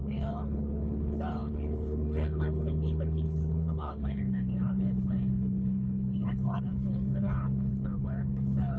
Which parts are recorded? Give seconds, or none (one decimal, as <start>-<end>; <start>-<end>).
none